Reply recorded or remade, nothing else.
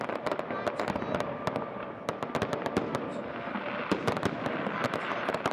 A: recorded